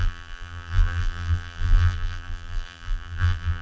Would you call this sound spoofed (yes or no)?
yes